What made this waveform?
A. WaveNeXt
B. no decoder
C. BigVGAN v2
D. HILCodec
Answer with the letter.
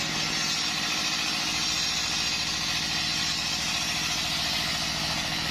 B